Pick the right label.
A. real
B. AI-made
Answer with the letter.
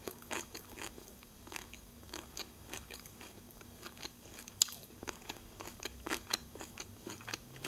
B